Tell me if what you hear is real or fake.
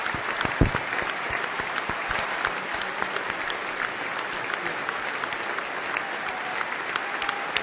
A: real